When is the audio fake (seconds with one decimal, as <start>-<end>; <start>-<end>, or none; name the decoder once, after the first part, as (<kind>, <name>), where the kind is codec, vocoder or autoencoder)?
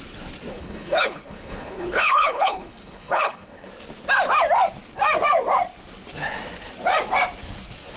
0.5-3.7 (codec, HILCodec)